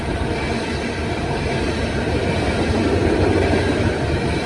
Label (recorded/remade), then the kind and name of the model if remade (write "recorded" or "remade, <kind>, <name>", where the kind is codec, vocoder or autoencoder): recorded